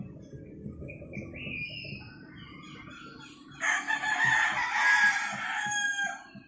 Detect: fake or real real